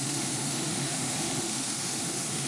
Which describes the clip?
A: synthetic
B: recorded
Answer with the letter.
A